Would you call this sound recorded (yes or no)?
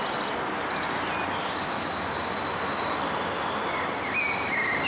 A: yes